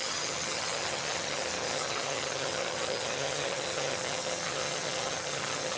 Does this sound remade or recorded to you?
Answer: remade